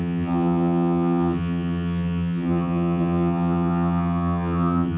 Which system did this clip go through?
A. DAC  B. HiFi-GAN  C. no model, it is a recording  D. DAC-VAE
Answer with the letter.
B